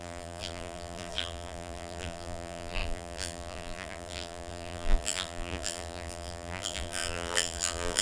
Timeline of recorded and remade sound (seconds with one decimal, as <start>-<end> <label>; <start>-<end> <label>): 0.0-8.0 remade